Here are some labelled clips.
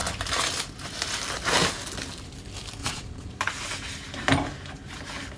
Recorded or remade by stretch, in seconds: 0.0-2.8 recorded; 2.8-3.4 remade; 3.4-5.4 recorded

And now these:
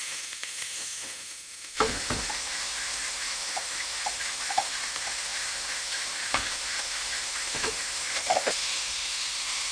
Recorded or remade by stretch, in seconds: 0.0-9.7 remade

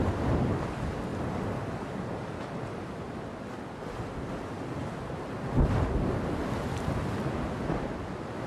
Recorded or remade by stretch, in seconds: 0.0-8.5 recorded

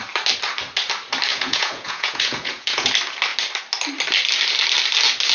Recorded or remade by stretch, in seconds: 0.0-1.3 recorded; 1.3-2.9 remade; 2.9-5.3 recorded

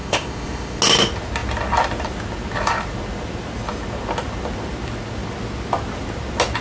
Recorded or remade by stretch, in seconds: 0.0-0.8 remade; 0.8-6.6 recorded

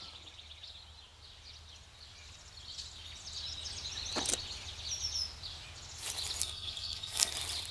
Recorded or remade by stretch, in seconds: 0.0-6.4 recorded; 6.4-7.3 remade; 7.3-7.7 recorded

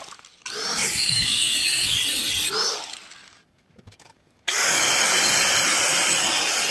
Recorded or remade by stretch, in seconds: 0.0-0.7 recorded; 0.7-2.0 remade; 2.0-3.2 recorded; 3.2-4.8 remade; 4.8-6.7 recorded

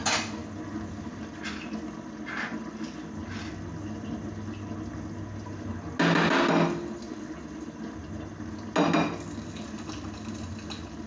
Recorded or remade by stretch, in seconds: 0.0-11.1 recorded